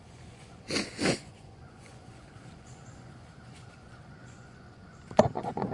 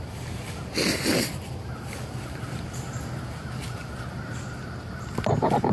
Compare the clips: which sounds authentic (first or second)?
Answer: second